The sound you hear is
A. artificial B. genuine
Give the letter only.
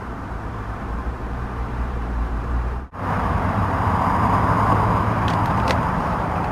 A